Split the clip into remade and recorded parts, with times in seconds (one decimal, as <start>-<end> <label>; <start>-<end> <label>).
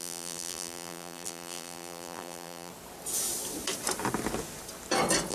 0.0-2.7 remade; 2.7-5.3 recorded